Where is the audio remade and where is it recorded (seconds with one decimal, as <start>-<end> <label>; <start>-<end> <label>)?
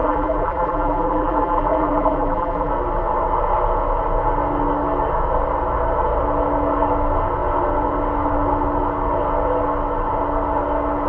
0.0-2.7 remade; 2.7-11.1 recorded